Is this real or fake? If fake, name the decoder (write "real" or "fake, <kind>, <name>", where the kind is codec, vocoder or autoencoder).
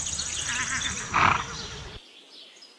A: real